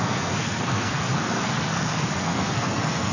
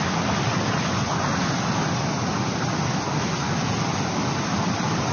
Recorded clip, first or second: second